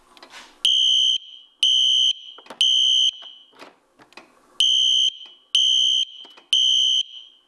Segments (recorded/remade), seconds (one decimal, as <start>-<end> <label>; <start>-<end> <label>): 0.0-7.5 recorded